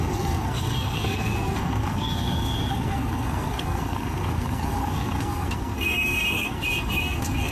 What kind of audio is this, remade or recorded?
remade